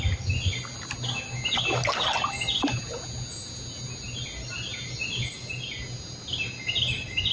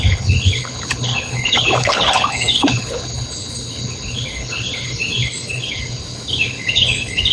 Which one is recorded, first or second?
first